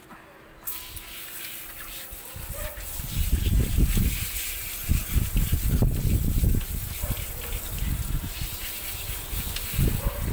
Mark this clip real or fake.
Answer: real